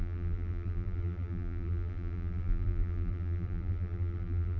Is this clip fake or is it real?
fake